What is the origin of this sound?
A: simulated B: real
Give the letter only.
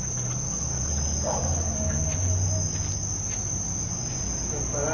B